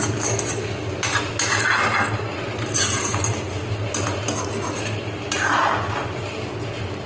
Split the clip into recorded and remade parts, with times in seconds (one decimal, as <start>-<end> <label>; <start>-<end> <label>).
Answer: 0.0-7.1 recorded